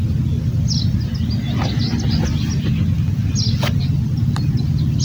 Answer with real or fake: real